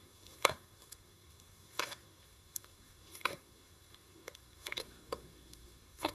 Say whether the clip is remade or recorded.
remade